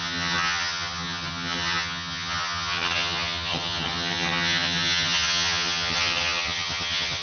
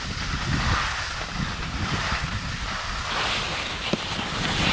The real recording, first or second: second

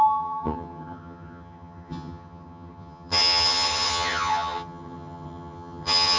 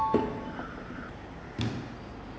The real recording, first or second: second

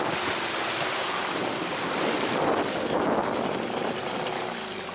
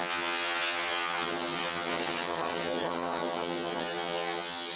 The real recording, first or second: first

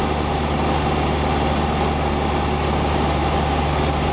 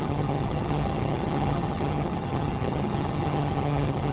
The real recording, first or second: first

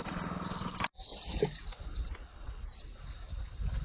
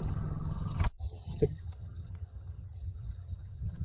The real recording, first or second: first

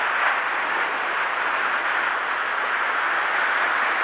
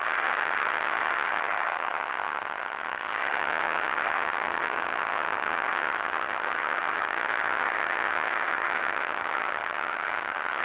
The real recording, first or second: first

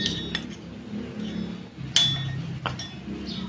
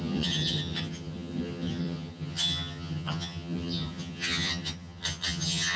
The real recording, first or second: first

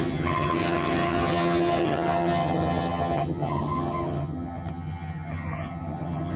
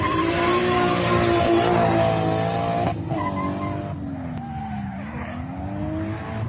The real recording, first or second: second